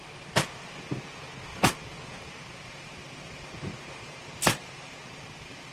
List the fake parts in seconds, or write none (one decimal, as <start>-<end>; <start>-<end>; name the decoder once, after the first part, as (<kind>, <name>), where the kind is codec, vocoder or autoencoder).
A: 1.5-4.9 (vocoder, BigVGAN v2)